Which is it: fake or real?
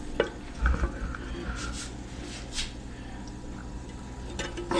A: real